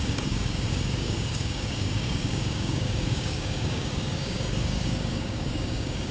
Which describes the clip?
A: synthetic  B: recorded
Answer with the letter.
A